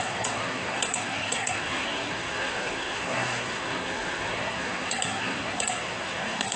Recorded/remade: remade